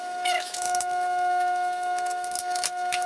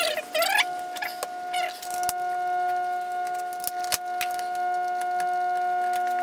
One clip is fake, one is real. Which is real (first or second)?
second